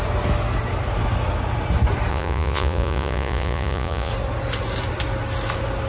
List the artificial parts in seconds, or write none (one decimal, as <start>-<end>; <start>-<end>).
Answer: 2.1-4.1